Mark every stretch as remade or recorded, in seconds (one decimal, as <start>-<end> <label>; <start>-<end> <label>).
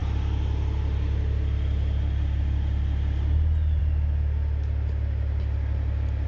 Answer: 0.0-6.3 recorded